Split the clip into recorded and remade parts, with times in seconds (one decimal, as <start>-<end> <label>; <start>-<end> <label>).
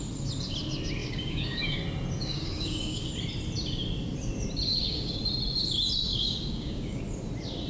0.0-1.0 recorded; 1.0-1.8 remade; 1.8-2.2 recorded; 2.2-3.1 remade; 3.1-4.7 recorded; 4.7-5.2 remade; 5.2-6.1 recorded; 6.1-7.0 remade; 7.0-7.7 recorded